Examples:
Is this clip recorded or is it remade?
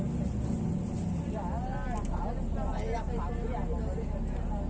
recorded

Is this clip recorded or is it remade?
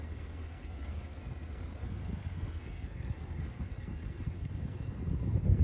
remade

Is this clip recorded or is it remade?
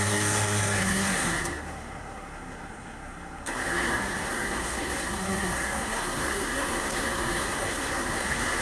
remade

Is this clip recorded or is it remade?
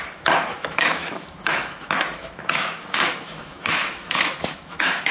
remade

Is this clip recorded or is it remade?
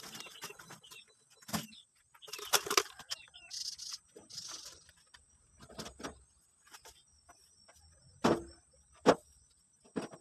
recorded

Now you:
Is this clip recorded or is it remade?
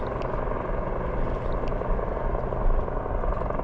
recorded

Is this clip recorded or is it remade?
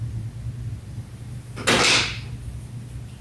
recorded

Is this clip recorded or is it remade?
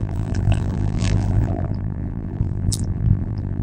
remade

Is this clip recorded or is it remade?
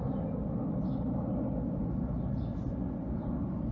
recorded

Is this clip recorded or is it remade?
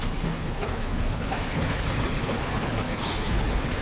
remade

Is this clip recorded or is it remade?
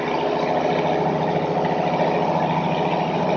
recorded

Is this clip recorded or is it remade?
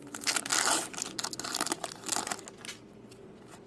recorded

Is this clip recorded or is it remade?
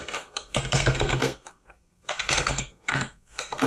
remade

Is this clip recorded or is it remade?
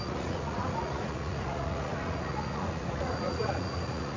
remade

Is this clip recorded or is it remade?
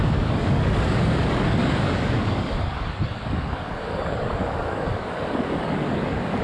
remade